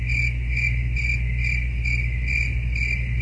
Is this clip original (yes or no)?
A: yes